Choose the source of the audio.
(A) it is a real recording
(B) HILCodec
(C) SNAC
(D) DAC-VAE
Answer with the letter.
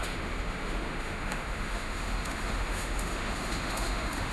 D